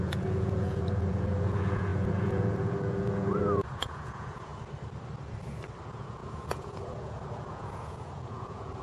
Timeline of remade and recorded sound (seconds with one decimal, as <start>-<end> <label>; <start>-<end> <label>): 0.0-4.5 remade; 4.5-5.8 recorded; 5.8-8.8 remade